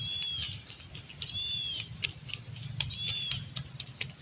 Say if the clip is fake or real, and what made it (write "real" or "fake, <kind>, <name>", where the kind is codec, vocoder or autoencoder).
real